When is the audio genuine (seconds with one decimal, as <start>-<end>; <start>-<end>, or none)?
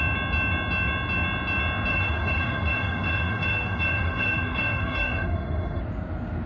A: 0.0-1.9; 5.8-6.5